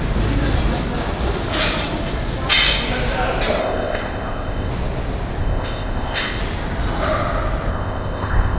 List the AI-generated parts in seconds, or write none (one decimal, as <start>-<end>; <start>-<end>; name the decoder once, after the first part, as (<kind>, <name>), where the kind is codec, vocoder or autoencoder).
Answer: 3.6-4.7 (codec, ZipCodec); 5.4-6.4; 7.7-8.6

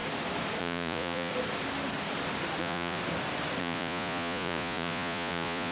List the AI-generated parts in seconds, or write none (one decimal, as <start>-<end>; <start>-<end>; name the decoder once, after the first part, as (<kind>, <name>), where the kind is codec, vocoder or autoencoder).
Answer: 0.6-1.3 (vocoder, Vocos); 2.6-3.0; 3.6-5.7

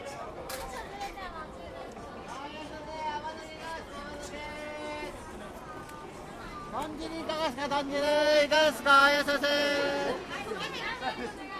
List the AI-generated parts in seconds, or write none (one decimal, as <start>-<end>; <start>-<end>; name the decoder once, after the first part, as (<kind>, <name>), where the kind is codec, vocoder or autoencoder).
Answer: 7.6-10.9 (vocoder, Vocos)

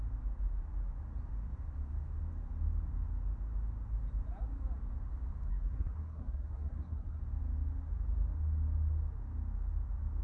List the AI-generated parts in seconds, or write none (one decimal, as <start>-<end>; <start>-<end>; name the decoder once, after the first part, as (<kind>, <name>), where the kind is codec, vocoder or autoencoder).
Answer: 5.5-7.2 (codec, SNAC)

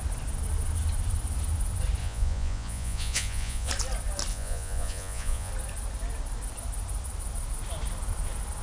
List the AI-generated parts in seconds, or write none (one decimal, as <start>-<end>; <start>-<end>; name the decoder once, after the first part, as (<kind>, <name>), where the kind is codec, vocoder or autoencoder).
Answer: 2.0-3.7 (vocoder, Vocos); 4.3-5.5

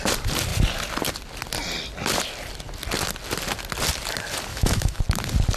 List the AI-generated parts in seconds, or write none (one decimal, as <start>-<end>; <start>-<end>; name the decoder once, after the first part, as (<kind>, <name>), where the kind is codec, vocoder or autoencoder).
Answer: 4.5-5.0 (autoencoder, DAC-VAE)

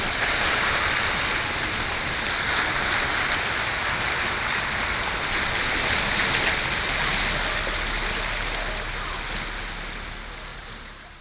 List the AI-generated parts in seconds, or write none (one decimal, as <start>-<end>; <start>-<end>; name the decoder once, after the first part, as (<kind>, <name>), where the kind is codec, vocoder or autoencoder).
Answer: 10.5-11.2 (vocoder, BigVGAN v2)